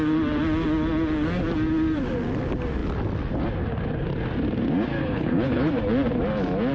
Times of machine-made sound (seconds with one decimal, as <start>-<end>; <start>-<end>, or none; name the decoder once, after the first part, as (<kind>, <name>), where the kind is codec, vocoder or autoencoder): 5.0-5.7 (codec, HILCodec)